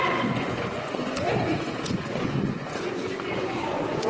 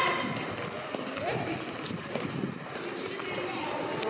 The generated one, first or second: first